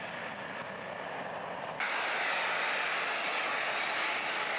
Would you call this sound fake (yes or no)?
no